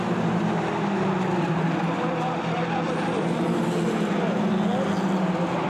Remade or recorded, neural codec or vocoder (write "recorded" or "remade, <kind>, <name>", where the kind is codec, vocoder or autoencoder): recorded